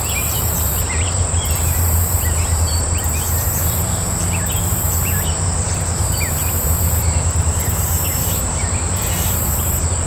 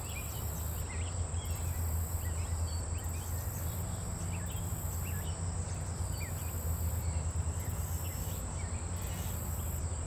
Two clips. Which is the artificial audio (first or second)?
first